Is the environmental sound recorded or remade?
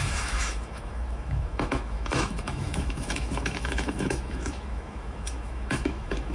remade